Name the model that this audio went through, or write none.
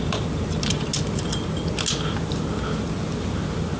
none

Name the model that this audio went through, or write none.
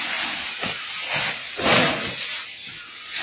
none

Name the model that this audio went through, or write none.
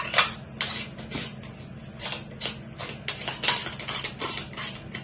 none